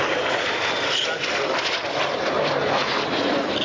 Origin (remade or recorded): recorded